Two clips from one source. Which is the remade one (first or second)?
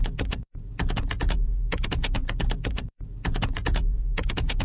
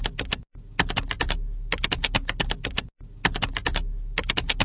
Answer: first